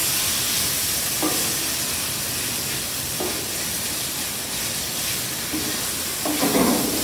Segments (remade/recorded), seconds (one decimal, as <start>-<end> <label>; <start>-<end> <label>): 0.0-7.0 recorded

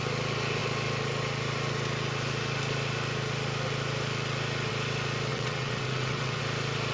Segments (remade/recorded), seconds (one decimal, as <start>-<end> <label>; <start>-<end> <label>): 0.0-5.3 recorded; 5.3-6.4 remade; 6.4-6.9 recorded